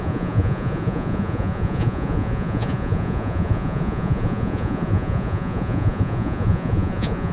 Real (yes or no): no